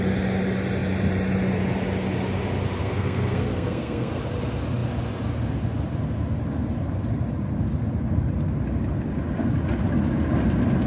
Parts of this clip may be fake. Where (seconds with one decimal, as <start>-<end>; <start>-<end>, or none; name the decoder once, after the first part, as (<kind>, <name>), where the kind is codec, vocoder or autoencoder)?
2.8-4.2 (codec, SNAC)